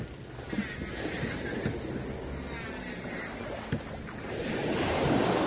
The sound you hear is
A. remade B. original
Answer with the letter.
B